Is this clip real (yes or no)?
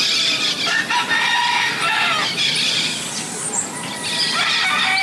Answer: yes